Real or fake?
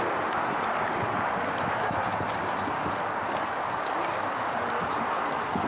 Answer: real